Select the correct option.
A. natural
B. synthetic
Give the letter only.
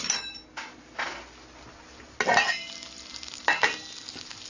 A